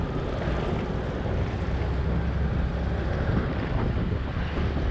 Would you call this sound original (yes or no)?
yes